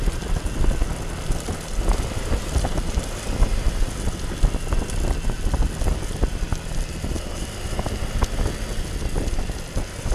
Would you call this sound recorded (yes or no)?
yes